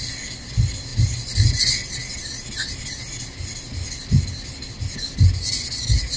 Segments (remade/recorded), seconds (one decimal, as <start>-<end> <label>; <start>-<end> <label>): 0.0-6.2 recorded